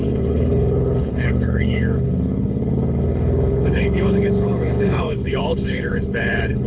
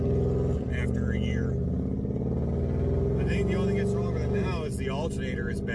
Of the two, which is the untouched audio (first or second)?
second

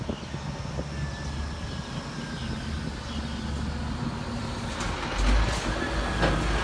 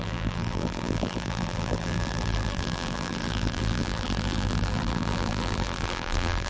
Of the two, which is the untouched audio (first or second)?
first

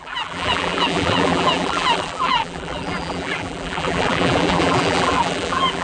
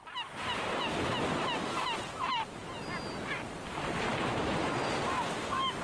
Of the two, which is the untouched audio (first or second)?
second